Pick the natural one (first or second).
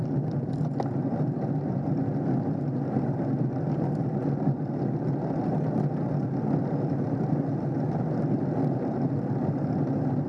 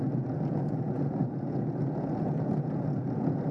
first